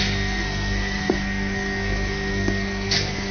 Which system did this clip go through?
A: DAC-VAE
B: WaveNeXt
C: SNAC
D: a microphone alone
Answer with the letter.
C